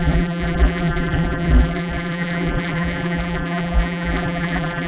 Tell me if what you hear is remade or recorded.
remade